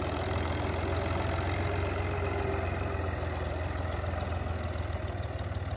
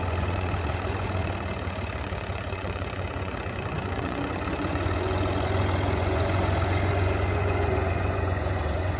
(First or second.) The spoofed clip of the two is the second